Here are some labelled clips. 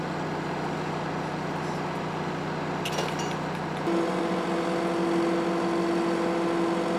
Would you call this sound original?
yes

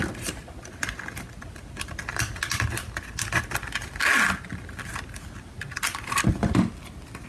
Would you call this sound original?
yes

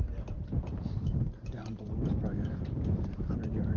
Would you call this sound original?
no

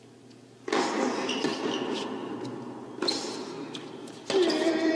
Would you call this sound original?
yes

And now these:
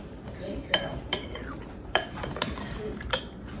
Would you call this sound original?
no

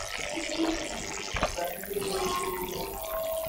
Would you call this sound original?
yes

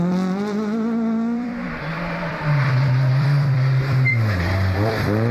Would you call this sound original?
no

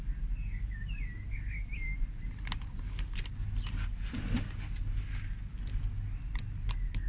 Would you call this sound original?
yes